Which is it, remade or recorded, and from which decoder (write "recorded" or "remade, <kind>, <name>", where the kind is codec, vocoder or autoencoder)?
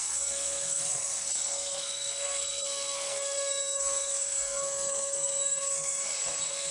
remade, codec, SNAC